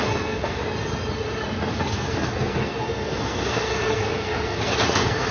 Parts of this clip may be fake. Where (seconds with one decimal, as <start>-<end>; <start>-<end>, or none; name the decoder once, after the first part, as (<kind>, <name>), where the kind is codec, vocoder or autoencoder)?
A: 0.0-0.6 (codec, SNAC); 1.7-5.3